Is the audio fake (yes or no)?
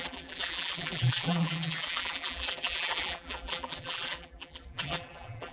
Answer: yes